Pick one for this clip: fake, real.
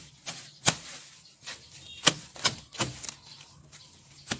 real